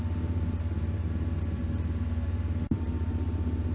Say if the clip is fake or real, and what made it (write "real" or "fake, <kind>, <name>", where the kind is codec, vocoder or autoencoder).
fake, vocoder, BigVGAN v2